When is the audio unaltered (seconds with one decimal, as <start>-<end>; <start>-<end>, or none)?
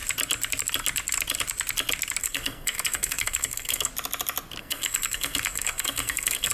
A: 0.0-2.2; 3.9-4.6